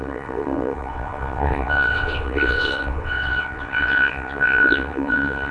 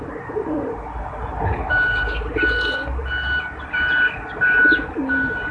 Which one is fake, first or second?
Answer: first